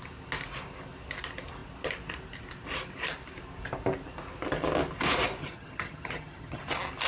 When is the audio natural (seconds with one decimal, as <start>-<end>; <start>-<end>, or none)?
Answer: 0.0-5.4; 6.6-7.1